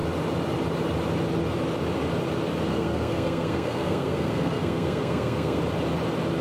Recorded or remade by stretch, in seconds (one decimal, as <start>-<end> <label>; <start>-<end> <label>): 0.0-2.7 recorded; 2.7-5.6 remade; 5.6-6.4 recorded